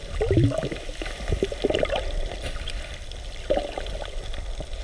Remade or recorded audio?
recorded